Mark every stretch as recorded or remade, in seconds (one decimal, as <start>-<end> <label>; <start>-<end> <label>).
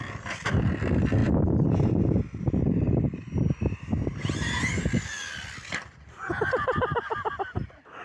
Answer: 0.0-8.0 recorded